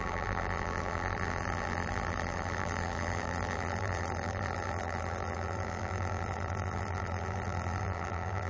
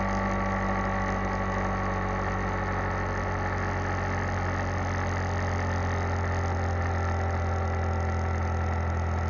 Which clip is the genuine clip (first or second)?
second